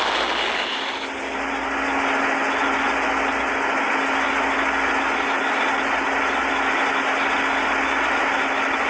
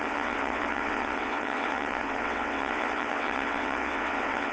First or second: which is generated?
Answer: second